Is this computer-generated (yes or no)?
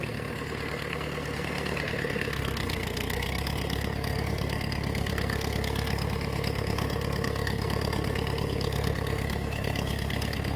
yes